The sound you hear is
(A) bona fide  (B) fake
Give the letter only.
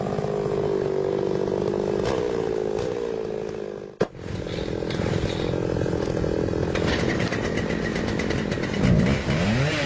A